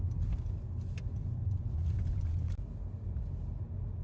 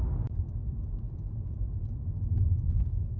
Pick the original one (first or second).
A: first